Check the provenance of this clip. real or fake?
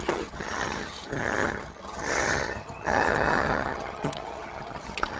fake